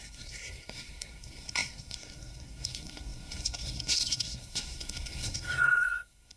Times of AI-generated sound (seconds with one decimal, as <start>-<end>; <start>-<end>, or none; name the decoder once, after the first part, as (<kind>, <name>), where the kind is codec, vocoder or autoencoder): 0.0-6.4 (codec, SNAC)